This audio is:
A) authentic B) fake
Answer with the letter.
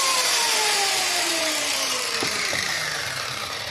B